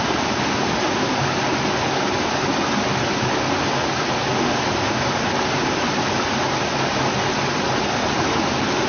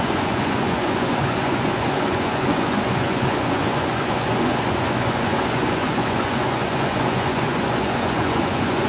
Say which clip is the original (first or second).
first